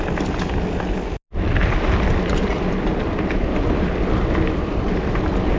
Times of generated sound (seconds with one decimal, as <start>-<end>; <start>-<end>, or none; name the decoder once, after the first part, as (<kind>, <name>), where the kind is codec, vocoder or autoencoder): 1.6-5.0 (vocoder, BigVGAN v2)